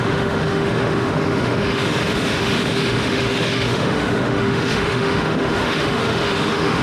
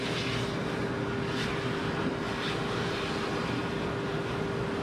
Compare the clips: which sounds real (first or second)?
second